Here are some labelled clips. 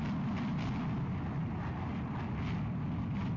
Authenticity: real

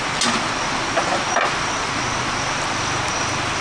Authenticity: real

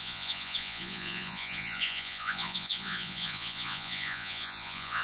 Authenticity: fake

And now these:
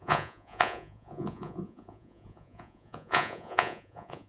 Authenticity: fake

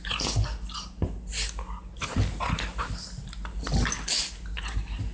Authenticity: real